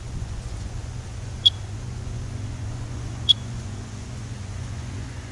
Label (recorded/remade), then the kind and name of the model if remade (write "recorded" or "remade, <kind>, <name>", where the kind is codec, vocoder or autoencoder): remade, vocoder, Vocos